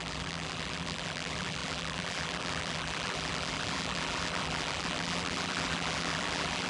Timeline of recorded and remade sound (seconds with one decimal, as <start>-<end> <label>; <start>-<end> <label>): 0.0-6.7 remade